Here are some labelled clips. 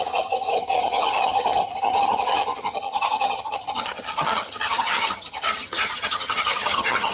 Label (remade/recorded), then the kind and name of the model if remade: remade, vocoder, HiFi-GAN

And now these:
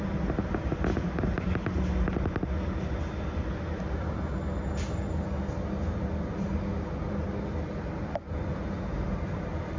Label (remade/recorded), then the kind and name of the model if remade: recorded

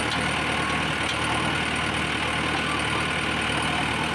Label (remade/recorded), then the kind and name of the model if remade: recorded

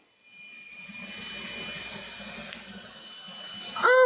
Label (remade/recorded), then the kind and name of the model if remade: recorded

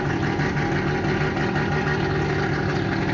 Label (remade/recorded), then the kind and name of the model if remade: recorded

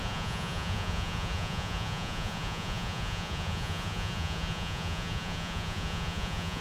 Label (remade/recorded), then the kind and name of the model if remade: remade, vocoder, Vocos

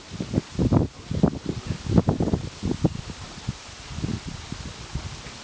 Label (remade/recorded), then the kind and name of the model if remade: recorded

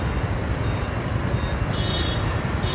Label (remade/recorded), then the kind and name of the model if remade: recorded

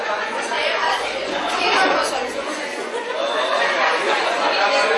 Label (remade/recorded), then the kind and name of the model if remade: remade, vocoder, Vocos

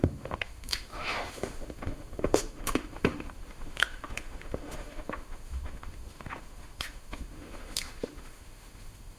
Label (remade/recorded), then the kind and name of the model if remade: remade, autoencoder, DAC-VAE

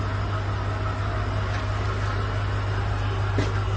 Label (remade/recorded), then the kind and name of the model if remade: recorded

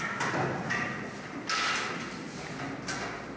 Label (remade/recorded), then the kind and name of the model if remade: recorded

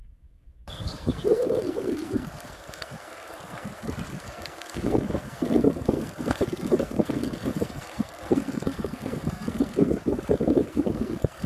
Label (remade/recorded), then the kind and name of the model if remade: remade, codec, SNAC